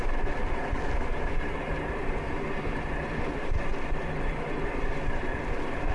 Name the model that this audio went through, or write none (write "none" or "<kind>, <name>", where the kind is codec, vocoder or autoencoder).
vocoder, BigVGAN v2